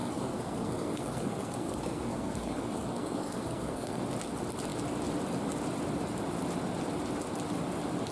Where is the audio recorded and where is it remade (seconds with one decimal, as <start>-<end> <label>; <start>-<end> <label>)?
0.0-4.0 remade; 4.0-8.1 recorded